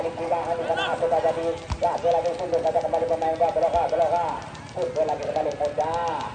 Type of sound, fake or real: real